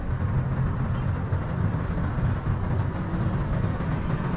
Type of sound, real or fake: real